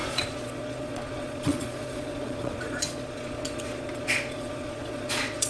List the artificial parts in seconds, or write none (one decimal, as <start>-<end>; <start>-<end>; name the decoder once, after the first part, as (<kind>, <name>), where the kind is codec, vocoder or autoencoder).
0.0-5.5 (vocoder, Vocos)

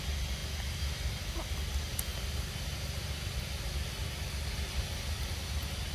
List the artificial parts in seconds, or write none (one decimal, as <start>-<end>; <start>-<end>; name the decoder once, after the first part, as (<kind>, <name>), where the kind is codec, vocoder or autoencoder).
none

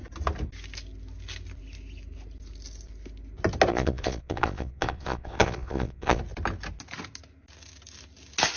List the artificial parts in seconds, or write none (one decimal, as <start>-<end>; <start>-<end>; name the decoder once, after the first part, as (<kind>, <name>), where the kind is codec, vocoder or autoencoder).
3.7-6.2 (vocoder, Vocos)